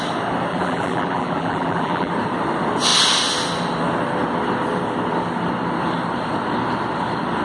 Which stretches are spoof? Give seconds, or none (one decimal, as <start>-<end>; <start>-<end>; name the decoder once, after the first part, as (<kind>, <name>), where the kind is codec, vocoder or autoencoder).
0.5-2.1 (vocoder, BigVGAN v2)